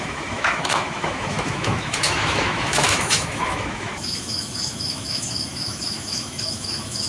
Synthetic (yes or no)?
yes